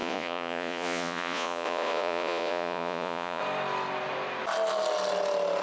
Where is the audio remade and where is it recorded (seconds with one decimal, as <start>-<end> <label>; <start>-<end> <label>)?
0.0-3.4 remade; 3.4-5.6 recorded